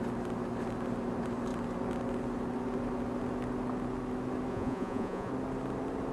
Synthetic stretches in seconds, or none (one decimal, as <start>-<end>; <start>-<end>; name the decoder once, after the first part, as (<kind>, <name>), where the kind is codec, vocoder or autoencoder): 4.5-5.3 (vocoder, Vocos)